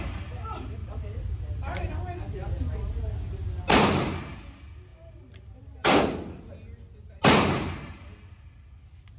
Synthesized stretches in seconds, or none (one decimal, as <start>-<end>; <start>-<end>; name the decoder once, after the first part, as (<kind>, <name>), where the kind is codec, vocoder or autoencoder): none